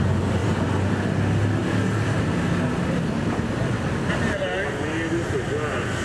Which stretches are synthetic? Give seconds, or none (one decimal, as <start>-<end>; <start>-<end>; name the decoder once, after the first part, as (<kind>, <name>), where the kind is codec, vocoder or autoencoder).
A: none